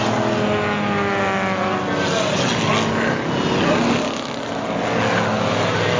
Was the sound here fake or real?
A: real